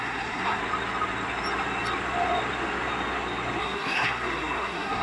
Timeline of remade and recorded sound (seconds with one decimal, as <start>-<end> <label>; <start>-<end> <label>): 0.0-0.6 remade; 0.6-3.6 recorded; 3.6-5.0 remade